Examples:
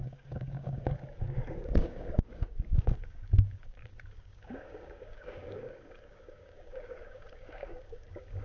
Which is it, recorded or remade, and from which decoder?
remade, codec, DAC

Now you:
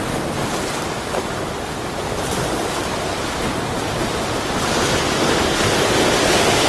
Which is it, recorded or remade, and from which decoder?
recorded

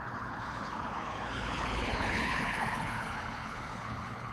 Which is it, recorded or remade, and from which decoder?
remade, codec, HILCodec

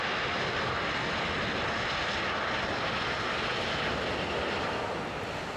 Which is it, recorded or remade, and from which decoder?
recorded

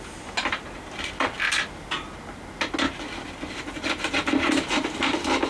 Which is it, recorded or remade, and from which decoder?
recorded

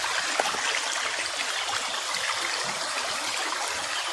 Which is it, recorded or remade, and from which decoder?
recorded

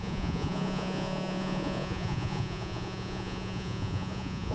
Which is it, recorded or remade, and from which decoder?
remade, vocoder, Vocos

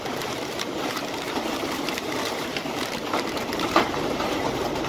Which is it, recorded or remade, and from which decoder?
remade, vocoder, BigVGAN v2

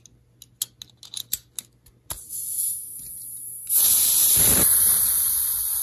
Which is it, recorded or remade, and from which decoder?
recorded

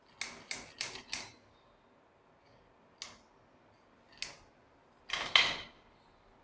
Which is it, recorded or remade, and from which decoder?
recorded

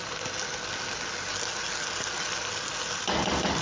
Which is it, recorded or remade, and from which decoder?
recorded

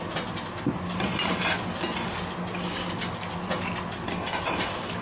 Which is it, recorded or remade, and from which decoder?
recorded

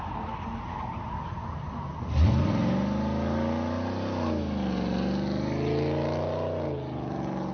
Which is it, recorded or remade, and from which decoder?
recorded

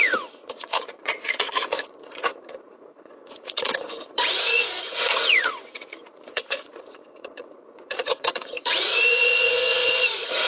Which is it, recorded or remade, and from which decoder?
remade, vocoder, Vocos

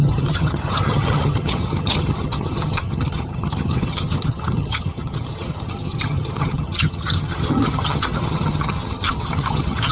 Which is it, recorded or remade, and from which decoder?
remade, vocoder, HiFi-GAN